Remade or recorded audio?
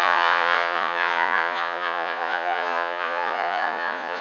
remade